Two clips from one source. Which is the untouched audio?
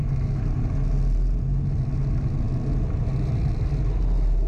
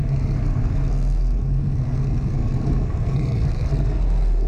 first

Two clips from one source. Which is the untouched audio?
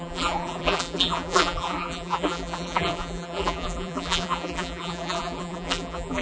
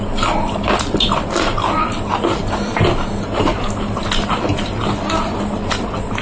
second